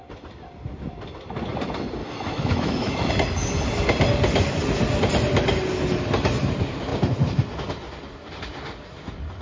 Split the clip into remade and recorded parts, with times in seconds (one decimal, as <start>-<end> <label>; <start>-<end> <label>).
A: 0.0-2.0 recorded; 2.0-3.1 remade; 3.1-9.4 recorded